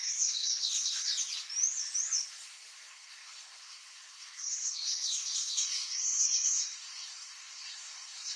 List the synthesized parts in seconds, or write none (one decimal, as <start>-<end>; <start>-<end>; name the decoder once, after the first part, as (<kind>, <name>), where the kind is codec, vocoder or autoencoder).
0.0-1.1 (codec, SNAC); 2.3-8.4